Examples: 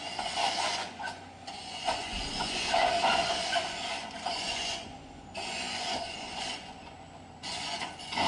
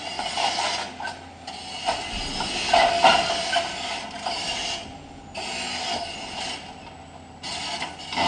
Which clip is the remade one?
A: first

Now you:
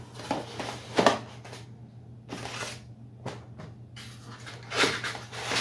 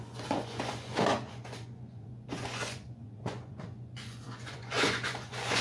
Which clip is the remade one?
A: second